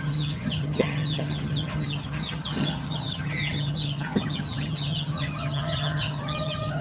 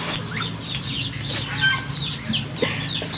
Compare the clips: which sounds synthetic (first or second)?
first